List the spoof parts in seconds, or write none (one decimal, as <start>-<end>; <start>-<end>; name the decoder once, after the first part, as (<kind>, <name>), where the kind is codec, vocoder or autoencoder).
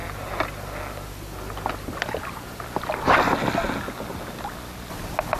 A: none